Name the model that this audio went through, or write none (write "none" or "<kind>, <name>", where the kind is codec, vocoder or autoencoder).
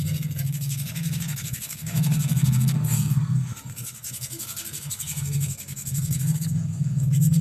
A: codec, SNAC